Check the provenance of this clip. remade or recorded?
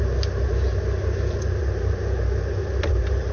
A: recorded